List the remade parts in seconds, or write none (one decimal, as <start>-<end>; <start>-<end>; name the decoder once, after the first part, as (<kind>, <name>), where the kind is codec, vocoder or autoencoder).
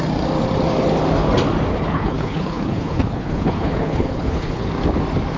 1.7-4.7 (codec, HILCodec)